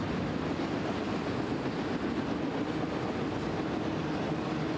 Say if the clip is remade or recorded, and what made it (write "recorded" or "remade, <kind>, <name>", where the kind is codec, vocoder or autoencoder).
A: recorded